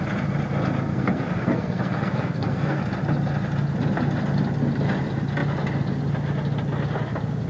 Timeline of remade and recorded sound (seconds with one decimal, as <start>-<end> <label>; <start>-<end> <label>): 0.0-0.9 recorded; 0.9-2.8 remade; 2.8-7.5 recorded